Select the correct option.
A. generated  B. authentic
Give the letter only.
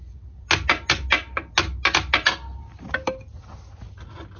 B